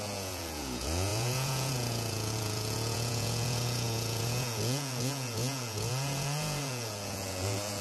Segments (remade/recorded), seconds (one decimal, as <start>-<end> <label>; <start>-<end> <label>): 0.0-7.8 remade